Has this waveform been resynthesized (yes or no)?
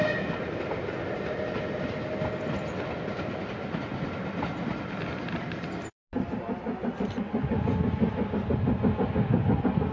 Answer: no